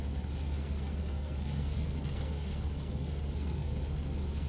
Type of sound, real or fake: fake